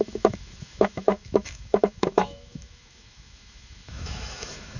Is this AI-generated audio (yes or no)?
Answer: yes